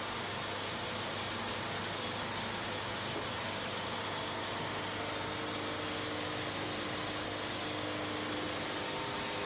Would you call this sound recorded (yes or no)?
yes